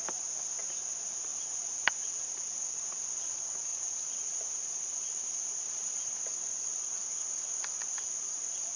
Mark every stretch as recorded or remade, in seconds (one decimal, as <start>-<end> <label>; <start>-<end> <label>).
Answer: 0.0-1.3 recorded; 1.3-2.5 remade; 2.5-3.7 recorded; 3.7-6.2 remade; 6.2-8.8 recorded